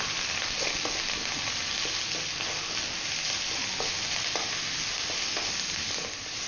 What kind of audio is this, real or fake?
real